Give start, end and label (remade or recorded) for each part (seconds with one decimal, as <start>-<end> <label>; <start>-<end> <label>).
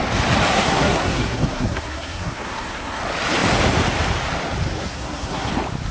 0.0-0.5 recorded; 0.5-3.0 remade; 3.0-4.8 recorded; 4.8-5.5 remade; 5.5-5.9 recorded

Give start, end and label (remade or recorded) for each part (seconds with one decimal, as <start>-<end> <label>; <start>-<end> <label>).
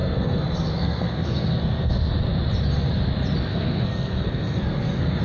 0.0-2.1 remade; 2.1-3.5 recorded; 3.5-5.2 remade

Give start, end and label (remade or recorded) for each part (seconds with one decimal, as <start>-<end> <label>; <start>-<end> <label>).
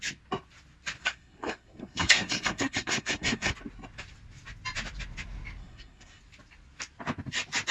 0.0-1.0 recorded; 1.0-3.5 remade; 3.5-5.6 recorded; 5.6-6.2 remade; 6.2-7.7 recorded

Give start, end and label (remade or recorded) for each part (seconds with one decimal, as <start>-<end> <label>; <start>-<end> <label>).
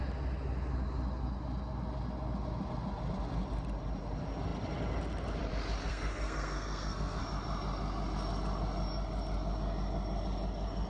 0.0-5.9 recorded; 5.9-7.2 remade; 7.2-10.9 recorded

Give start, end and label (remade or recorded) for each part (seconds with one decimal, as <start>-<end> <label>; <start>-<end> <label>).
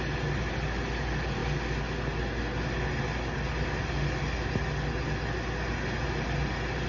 0.0-6.9 recorded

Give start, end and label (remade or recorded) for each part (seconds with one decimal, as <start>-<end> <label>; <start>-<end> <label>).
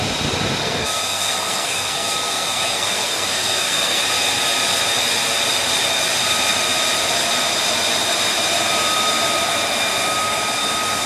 0.0-0.6 recorded; 0.6-4.0 remade; 4.0-11.1 recorded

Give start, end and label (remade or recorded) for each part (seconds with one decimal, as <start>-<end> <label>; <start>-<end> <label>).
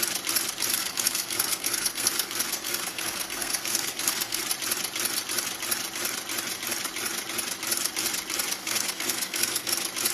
0.0-0.7 recorded; 0.7-4.4 remade; 4.4-8.6 recorded; 8.6-9.7 remade; 9.7-10.1 recorded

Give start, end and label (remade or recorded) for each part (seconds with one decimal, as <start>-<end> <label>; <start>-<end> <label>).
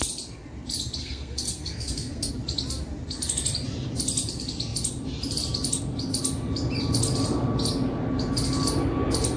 0.0-1.0 recorded; 1.0-2.3 remade; 2.3-9.4 recorded